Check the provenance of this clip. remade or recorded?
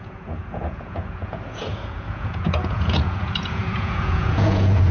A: remade